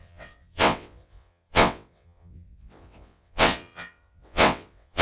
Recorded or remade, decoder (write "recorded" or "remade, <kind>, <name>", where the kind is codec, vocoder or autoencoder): remade, vocoder, WaveNeXt